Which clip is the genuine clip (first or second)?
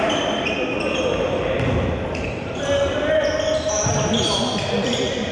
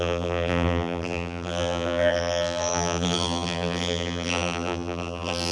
first